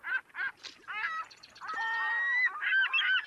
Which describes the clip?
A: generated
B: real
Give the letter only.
B